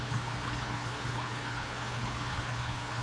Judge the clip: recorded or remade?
remade